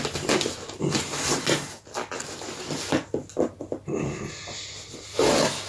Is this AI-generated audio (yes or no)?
no